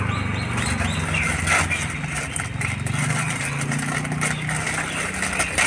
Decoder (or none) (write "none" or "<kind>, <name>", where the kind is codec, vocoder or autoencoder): none